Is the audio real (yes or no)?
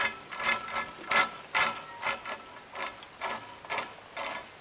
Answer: yes